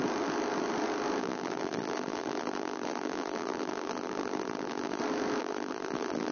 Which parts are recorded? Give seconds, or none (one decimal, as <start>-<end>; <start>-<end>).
0.0-1.2; 5.0-5.4